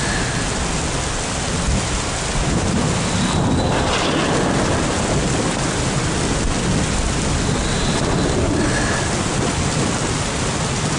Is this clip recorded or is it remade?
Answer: recorded